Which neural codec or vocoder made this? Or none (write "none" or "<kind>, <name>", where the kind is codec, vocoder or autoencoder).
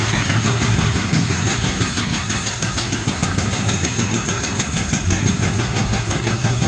codec, SNAC